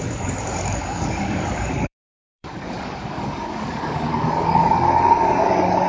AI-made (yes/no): yes